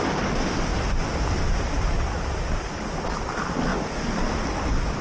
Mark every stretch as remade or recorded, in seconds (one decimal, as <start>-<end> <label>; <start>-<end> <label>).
0.0-5.0 recorded